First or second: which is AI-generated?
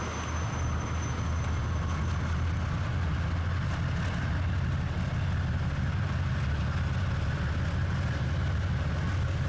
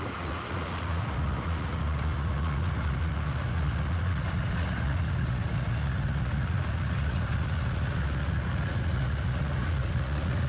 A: second